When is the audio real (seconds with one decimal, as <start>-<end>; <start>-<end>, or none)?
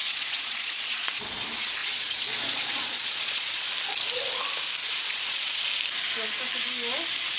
1.4-1.8; 3.7-4.8; 5.6-7.4